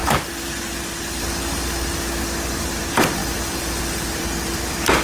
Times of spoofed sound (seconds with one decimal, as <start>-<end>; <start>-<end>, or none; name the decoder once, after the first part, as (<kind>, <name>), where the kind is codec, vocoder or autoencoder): 2.6-5.0 (vocoder, BigVGAN v2)